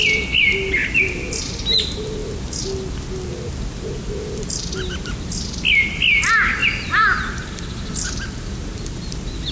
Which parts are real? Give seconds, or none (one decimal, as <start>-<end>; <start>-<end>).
0.0-0.8; 1.8-6.6; 7.3-9.5